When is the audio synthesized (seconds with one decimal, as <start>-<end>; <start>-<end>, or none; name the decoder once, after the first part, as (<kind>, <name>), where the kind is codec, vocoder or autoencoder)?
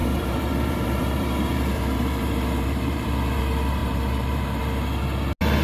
0.0-3.4 (vocoder, BigVGAN v2); 3.8-4.6